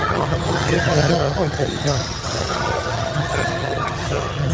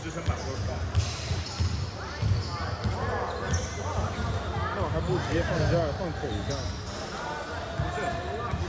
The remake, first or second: first